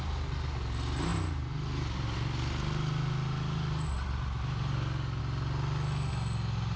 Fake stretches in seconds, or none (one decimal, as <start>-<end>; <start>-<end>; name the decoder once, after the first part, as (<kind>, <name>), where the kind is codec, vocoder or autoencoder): none